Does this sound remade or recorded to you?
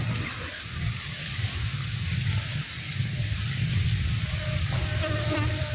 recorded